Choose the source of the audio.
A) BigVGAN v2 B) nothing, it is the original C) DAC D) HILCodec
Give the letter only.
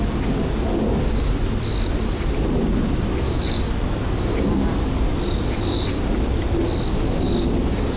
B